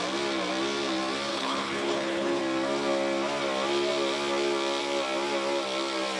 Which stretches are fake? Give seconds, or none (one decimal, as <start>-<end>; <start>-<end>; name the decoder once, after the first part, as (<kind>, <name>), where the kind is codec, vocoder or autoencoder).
1.3-2.4 (codec, HILCodec)